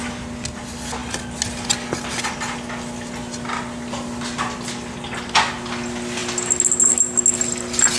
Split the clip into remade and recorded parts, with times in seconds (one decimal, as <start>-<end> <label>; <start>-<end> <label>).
0.0-8.0 recorded